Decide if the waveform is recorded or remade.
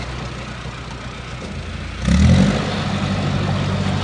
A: recorded